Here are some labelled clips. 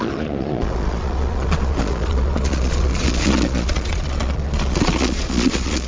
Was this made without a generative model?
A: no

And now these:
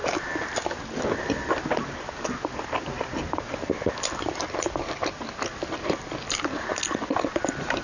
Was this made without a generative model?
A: yes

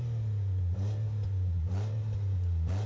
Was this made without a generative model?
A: yes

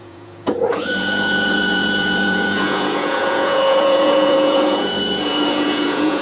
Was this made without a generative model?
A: no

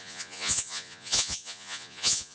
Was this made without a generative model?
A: no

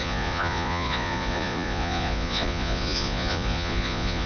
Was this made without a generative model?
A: no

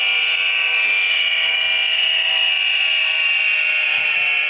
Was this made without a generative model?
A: yes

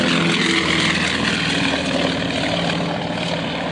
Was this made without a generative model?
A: yes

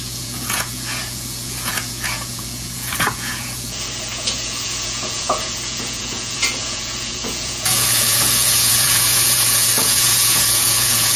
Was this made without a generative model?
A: no